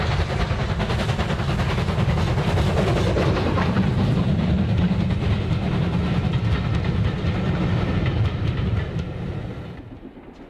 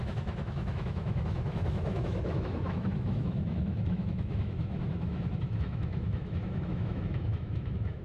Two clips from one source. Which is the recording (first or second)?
first